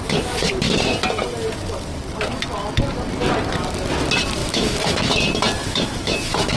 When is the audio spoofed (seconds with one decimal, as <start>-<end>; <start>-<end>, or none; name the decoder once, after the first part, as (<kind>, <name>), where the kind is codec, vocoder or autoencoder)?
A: 4.4-5.1 (autoencoder, DAC-VAE); 5.6-6.6